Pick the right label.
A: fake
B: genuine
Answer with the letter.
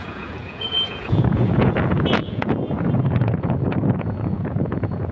A